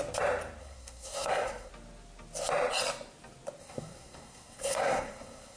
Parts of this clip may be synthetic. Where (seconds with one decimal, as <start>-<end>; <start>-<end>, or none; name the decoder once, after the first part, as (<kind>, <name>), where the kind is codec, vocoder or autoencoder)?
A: 0.6-1.7 (codec, SNAC); 3.6-5.6